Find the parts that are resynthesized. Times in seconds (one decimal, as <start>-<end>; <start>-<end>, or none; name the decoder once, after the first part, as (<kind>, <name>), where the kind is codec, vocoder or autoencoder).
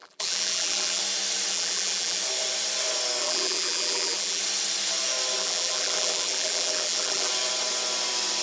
0.0-1.0 (vocoder, BigVGAN v2); 1.5-2.2; 3.2-4.4; 5.4-7.3